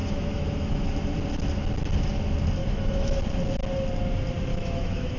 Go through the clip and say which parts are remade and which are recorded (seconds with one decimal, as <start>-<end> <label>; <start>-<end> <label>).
0.0-0.9 remade; 0.9-2.6 recorded; 2.6-3.2 remade; 3.2-4.5 recorded; 4.5-5.2 remade